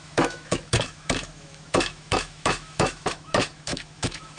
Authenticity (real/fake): fake